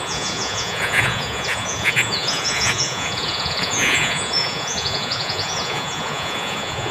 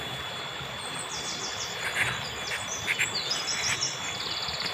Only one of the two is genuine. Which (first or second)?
second